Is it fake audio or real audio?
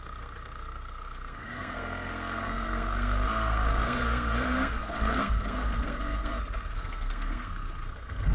fake